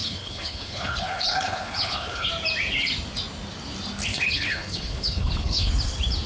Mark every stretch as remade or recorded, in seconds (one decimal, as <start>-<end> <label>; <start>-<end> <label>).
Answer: 0.0-2.3 remade; 2.3-4.1 recorded; 4.1-5.7 remade; 5.7-6.3 recorded